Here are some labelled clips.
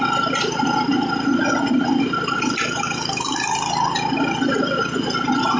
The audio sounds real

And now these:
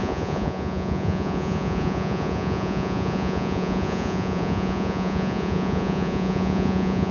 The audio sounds fake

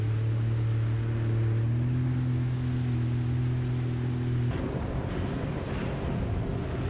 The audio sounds real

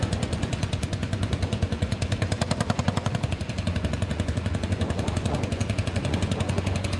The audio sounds fake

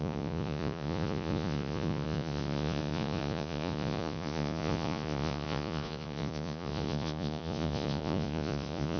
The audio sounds fake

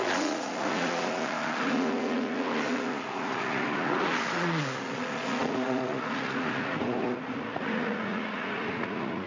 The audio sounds fake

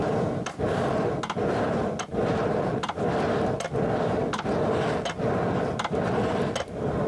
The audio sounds real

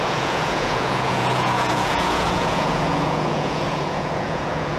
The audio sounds fake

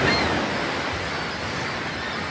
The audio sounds real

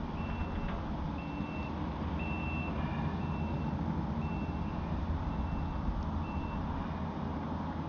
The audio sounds real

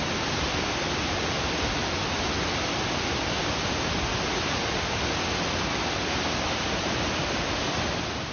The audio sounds real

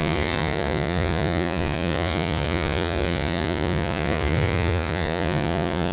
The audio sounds fake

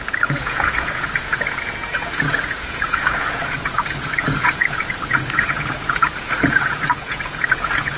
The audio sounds fake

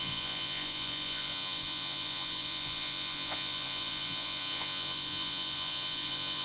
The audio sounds fake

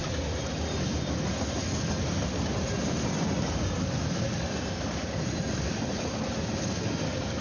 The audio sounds real